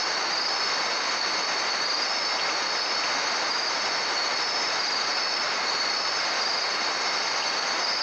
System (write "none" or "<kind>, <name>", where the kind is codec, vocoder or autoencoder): none